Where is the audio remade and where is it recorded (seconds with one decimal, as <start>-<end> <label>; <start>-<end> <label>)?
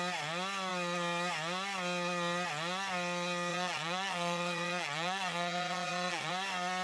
0.0-3.5 recorded; 3.5-6.3 remade; 6.3-6.8 recorded